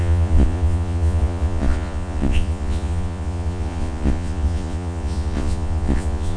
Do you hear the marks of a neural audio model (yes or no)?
yes